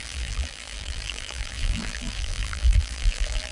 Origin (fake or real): fake